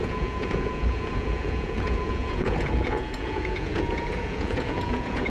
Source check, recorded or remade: remade